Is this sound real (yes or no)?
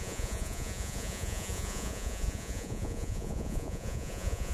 no